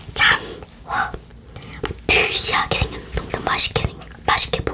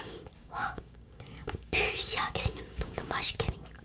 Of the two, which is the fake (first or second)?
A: second